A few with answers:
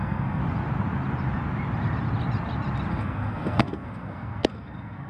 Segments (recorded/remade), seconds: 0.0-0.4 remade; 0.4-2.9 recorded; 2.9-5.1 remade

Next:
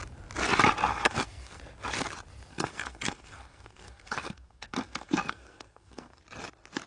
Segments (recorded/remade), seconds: 0.0-0.9 recorded; 0.9-1.6 remade; 1.6-2.5 recorded; 2.5-6.2 remade; 6.2-6.9 recorded